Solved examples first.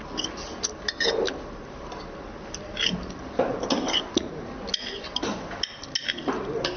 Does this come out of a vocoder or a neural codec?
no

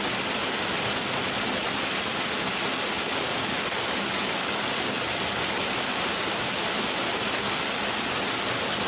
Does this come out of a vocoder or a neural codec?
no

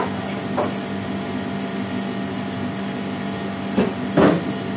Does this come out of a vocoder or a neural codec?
no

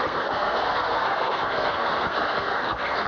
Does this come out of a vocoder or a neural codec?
yes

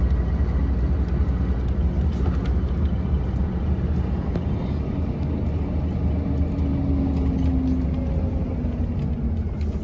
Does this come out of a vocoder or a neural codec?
no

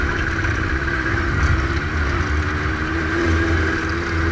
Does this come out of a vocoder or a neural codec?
no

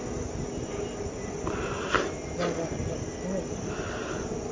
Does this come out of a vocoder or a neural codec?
no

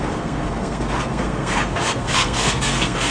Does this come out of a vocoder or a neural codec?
yes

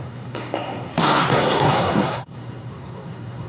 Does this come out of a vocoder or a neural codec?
yes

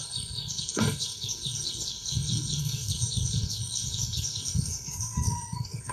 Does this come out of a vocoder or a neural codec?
yes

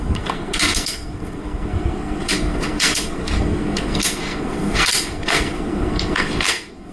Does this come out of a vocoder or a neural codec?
yes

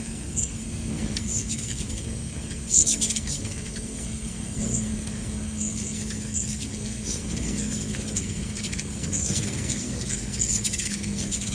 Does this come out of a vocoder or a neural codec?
yes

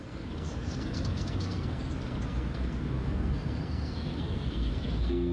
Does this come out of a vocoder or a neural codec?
yes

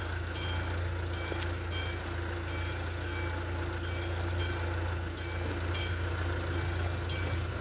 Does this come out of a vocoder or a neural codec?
no